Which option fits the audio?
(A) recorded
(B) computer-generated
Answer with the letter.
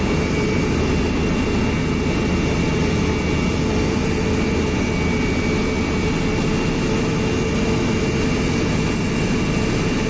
A